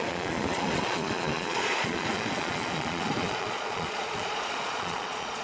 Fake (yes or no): yes